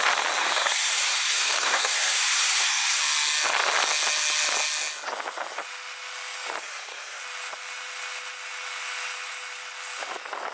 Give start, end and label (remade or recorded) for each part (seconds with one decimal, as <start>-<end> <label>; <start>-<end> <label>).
0.0-0.4 recorded; 0.4-3.0 remade; 3.0-6.6 recorded; 6.6-7.2 remade; 7.2-10.5 recorded